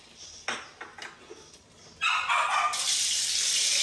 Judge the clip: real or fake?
real